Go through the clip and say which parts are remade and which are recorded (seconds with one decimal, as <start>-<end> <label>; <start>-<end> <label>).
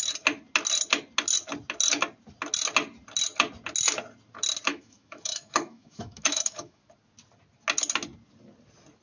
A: 0.0-4.7 recorded; 4.7-6.8 remade; 6.8-9.0 recorded